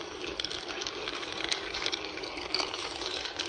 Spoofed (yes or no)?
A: yes